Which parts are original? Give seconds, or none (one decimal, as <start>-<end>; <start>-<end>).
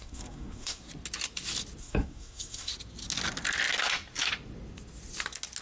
0.8-1.8; 2.7-5.6